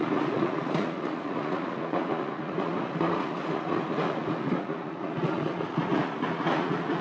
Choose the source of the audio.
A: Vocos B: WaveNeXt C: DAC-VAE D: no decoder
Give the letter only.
A